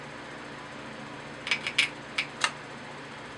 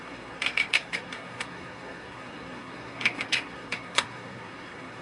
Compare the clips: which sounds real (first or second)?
first